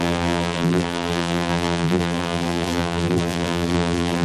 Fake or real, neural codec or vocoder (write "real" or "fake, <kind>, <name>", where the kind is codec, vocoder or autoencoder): fake, vocoder, BigVGAN v2